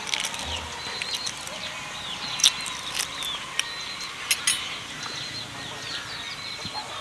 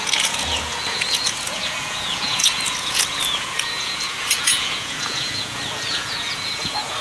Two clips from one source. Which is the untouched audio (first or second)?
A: first